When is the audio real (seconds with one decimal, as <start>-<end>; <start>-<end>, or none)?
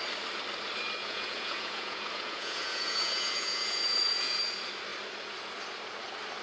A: 0.0-1.0; 4.4-6.4